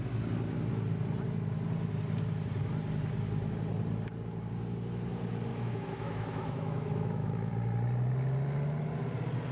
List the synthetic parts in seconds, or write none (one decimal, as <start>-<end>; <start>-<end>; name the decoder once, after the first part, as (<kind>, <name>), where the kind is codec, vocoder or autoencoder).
5.5-7.5 (autoencoder, DAC-VAE)